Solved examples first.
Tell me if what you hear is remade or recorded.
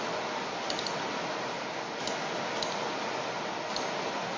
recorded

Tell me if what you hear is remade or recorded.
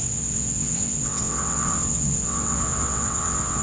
remade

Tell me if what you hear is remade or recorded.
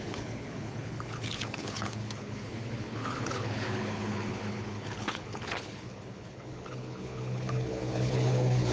remade